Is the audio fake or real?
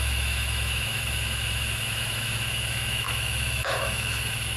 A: fake